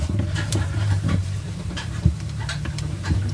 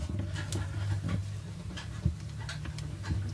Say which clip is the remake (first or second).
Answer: first